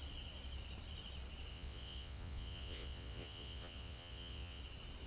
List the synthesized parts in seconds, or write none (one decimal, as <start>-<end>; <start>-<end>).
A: 1.5-4.6